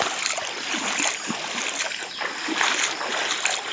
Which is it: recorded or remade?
recorded